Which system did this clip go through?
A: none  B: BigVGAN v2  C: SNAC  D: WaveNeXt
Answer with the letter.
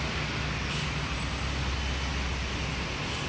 A